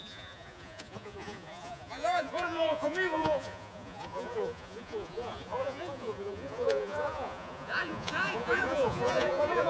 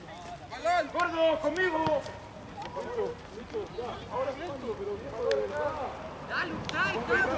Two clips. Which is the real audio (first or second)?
second